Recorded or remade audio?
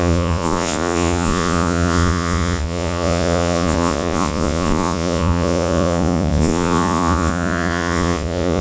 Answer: remade